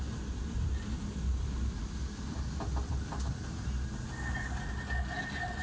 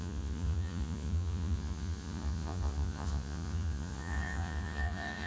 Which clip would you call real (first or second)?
first